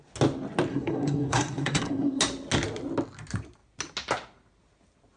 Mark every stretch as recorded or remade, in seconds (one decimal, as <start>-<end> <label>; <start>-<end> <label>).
0.0-0.7 recorded; 0.7-2.2 remade; 2.2-5.2 recorded